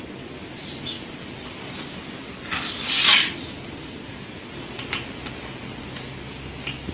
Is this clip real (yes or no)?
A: yes